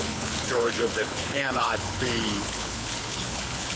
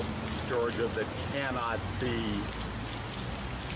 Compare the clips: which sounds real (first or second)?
second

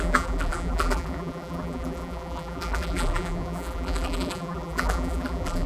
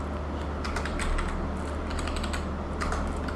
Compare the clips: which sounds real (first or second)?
second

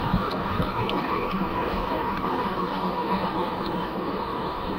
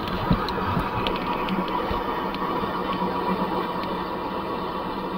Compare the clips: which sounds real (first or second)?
second